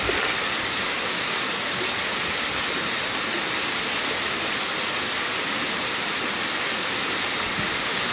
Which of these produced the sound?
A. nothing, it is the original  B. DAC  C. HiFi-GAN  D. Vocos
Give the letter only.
A